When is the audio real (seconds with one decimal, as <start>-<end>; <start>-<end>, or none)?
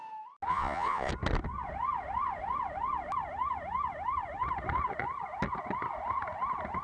0.0-0.5; 1.1-6.8